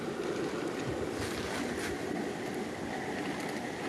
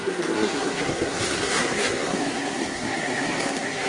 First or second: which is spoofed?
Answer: second